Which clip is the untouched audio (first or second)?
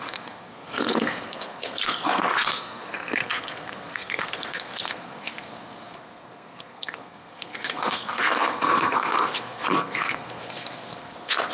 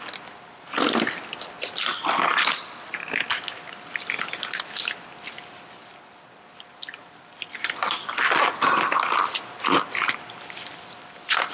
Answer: second